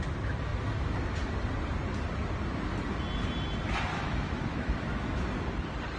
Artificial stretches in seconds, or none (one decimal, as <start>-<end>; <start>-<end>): 3.9-5.3